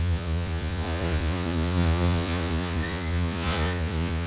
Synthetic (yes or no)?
yes